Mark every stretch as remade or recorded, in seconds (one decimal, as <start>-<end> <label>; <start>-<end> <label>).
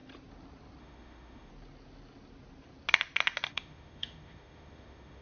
0.0-0.8 recorded; 0.8-1.5 remade; 1.5-3.5 recorded; 3.5-5.2 remade